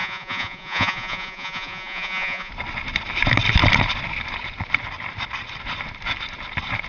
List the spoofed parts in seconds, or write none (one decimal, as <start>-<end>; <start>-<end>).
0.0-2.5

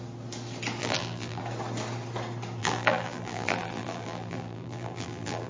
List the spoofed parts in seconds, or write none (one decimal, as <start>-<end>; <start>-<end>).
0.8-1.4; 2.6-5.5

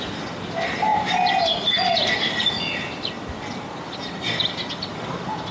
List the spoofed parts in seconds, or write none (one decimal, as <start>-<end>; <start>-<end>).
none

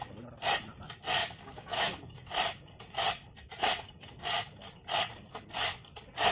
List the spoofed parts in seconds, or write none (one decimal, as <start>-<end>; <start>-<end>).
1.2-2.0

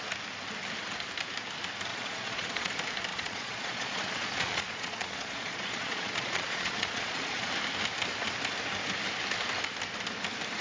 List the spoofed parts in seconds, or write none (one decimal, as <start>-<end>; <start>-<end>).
1.9-2.7; 3.1-7.5

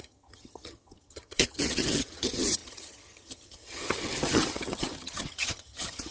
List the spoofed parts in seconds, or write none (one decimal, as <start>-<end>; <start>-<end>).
0.0-6.1